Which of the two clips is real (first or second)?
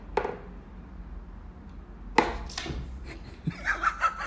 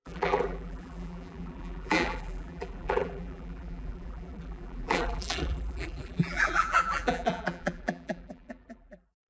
first